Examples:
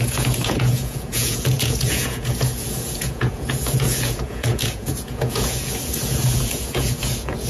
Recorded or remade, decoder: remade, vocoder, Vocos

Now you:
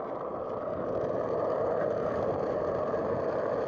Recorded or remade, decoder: recorded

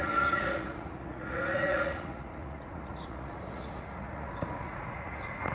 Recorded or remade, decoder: remade, vocoder, Vocos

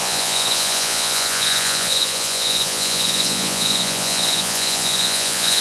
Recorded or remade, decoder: remade, vocoder, Vocos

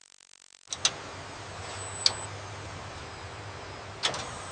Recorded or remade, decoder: recorded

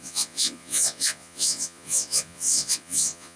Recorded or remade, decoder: remade, vocoder, Vocos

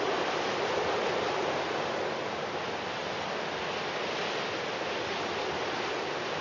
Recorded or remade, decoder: recorded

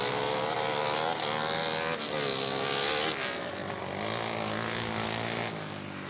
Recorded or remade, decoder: recorded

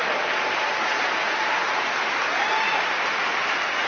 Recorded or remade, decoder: recorded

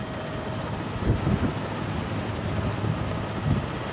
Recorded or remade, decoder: recorded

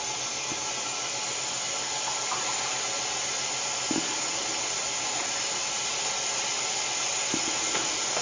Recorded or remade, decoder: recorded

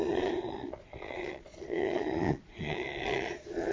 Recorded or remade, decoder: remade, vocoder, Vocos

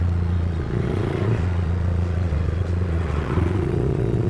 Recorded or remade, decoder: remade, vocoder, Vocos